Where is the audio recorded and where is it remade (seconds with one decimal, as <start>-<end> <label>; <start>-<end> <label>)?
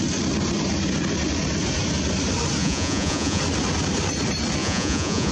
0.0-2.6 recorded; 2.6-3.4 remade; 3.4-4.6 recorded; 4.6-5.3 remade